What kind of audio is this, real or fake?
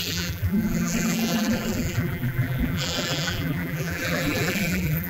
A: fake